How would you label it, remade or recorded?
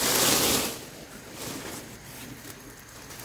recorded